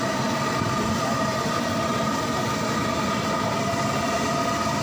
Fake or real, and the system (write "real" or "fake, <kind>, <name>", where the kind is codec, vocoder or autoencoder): fake, vocoder, BigVGAN v2